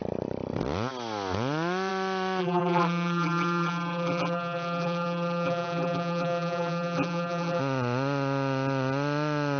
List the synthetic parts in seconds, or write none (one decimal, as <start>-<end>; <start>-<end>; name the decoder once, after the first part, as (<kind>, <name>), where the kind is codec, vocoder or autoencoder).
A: 2.4-7.6 (vocoder, BigVGAN v2)